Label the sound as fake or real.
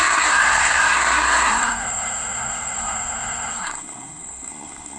fake